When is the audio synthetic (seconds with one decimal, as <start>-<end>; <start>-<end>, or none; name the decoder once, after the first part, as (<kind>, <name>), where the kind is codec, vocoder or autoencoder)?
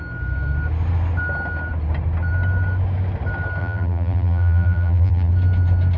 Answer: 3.6-5.3 (vocoder, BigVGAN v2)